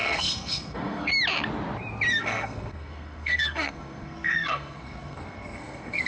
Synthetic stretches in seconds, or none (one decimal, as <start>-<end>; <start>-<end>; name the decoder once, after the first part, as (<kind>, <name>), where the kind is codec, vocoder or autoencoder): 0.0-1.1 (codec, SNAC); 2.1-6.1